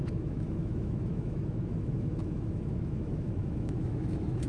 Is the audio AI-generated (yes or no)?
yes